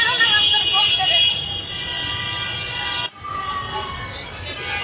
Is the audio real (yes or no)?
yes